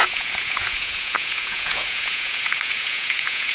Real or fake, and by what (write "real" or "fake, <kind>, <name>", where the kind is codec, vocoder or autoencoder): fake, vocoder, Vocos